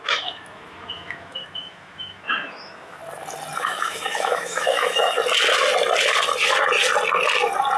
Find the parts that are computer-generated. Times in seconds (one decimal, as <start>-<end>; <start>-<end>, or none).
0.0-3.0; 3.6-5.2